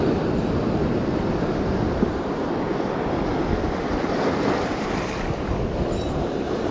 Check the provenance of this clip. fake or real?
fake